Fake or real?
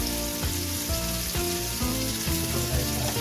real